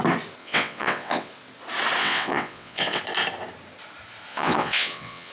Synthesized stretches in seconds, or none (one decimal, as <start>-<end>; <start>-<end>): 0.4-1.3; 2.0-3.0; 4.3-5.3